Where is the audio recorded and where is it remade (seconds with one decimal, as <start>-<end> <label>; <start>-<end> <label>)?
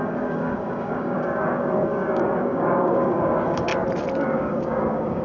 0.0-3.7 remade; 3.7-4.2 recorded; 4.2-5.2 remade